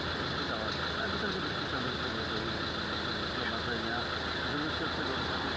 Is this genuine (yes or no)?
yes